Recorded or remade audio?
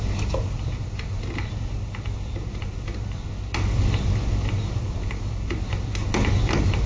recorded